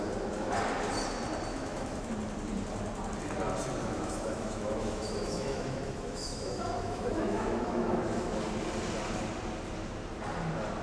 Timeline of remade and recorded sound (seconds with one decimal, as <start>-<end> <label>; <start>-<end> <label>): 0.0-1.5 recorded; 1.5-2.1 remade; 2.1-3.8 recorded; 3.8-8.4 remade; 8.4-10.8 recorded

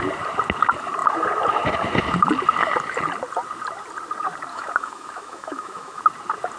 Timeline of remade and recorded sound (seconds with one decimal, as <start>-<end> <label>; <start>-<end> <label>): 0.0-4.5 recorded; 4.5-6.0 remade; 6.0-6.6 recorded

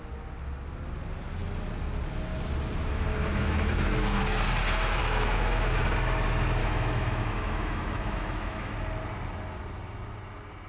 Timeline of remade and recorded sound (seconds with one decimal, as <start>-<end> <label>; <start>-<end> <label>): 0.0-3.2 recorded; 3.2-4.2 remade; 4.2-5.0 recorded; 5.0-5.8 remade; 5.8-6.6 recorded; 6.6-8.7 remade; 8.7-10.7 recorded

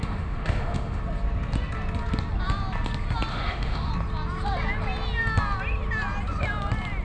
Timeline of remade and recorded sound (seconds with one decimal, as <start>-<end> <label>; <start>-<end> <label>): 0.0-1.0 remade; 1.0-3.3 recorded; 3.3-3.9 remade; 3.9-7.0 recorded